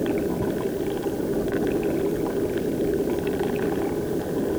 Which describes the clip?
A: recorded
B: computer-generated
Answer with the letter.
A